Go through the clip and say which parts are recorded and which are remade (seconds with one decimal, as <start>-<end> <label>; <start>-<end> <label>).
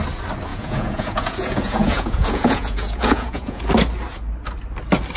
0.0-0.5 recorded; 0.5-3.6 remade; 3.6-5.2 recorded